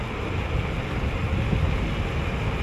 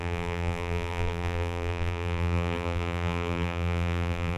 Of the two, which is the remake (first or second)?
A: second